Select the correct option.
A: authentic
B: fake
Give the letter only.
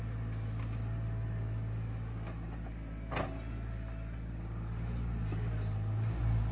A